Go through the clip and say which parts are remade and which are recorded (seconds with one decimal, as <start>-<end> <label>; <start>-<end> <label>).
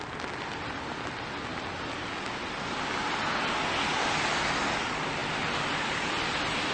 0.0-6.7 recorded